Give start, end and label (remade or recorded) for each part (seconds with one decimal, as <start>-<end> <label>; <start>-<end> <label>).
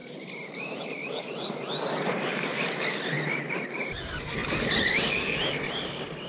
0.0-0.5 recorded; 0.5-6.3 remade